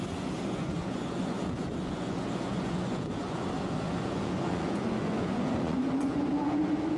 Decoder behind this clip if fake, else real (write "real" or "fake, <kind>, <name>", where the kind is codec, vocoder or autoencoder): fake, vocoder, Vocos